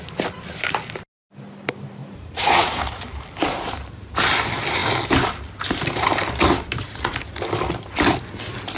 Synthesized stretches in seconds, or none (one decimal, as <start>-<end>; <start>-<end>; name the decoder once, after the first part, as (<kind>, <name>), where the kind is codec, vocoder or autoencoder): 2.0-3.0 (vocoder, Vocos)